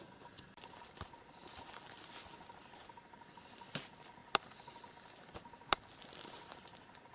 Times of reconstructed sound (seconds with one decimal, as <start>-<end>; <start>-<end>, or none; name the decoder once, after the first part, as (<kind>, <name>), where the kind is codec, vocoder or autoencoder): none